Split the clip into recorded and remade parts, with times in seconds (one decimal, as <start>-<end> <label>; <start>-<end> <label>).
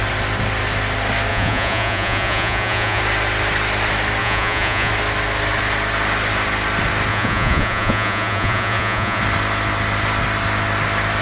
0.0-1.3 recorded; 1.3-3.0 remade; 3.0-4.2 recorded; 4.2-4.9 remade; 4.9-7.1 recorded; 7.1-9.2 remade; 9.2-11.2 recorded